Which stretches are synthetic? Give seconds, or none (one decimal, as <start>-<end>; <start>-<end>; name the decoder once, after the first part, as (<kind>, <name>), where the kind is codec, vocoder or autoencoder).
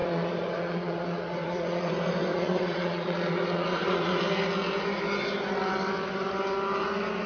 0.0-1.9 (vocoder, Vocos); 2.3-4.2